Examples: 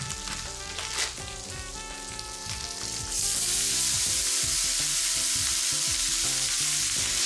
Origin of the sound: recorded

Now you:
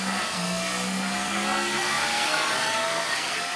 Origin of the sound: remade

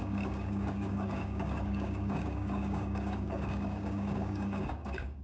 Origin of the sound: remade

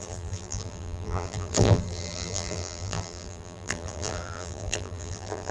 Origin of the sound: remade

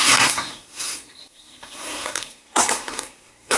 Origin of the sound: remade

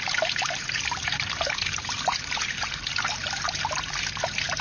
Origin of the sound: remade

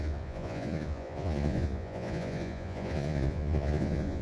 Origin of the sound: remade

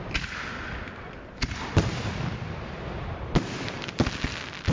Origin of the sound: recorded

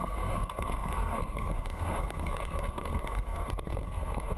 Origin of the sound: remade